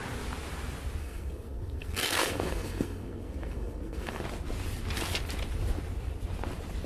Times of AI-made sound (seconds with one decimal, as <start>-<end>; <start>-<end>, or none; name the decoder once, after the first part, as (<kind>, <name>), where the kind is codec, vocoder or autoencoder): 1.0-4.2 (codec, SNAC)